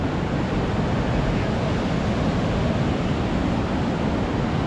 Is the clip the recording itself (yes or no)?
yes